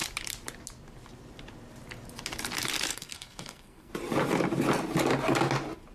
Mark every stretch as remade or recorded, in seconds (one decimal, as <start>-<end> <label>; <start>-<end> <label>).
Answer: 0.0-2.9 recorded; 2.9-3.9 remade; 3.9-5.9 recorded